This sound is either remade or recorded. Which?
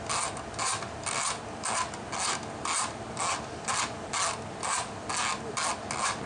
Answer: recorded